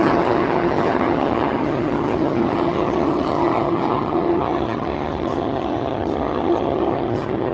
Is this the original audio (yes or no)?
no